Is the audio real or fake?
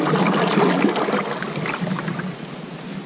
real